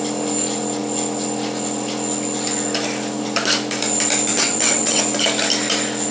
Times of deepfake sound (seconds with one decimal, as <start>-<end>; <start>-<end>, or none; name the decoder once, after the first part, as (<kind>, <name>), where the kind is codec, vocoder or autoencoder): 4.3-5.0 (vocoder, WaveNeXt)